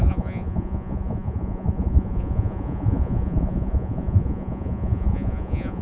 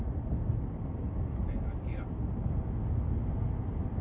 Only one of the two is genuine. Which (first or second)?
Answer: second